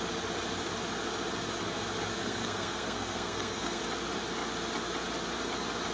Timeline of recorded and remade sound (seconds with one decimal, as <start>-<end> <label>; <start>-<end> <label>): 0.0-2.2 recorded; 2.2-3.8 remade; 3.8-5.9 recorded